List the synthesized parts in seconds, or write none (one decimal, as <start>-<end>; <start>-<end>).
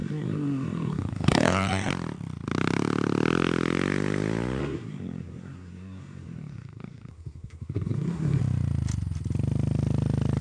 0.0-1.9; 4.6-8.4